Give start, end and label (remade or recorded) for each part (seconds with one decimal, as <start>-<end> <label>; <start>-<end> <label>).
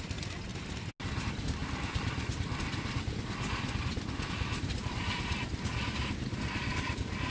0.0-0.5 remade; 0.5-1.2 recorded; 1.2-7.3 remade